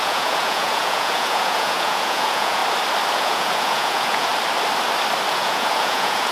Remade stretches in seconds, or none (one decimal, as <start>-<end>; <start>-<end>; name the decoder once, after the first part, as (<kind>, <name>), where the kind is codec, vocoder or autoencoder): 0.0-2.6 (vocoder, Vocos); 3.1-4.3; 5.3-6.3